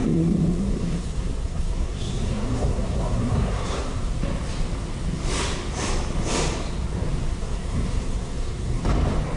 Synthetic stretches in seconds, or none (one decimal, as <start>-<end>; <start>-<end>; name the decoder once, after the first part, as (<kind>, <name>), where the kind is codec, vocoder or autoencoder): 0.0-4.0 (codec, SNAC); 7.4-8.8